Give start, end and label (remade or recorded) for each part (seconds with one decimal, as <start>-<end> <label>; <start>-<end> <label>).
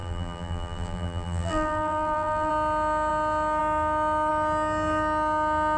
0.0-2.5 remade; 2.5-5.8 recorded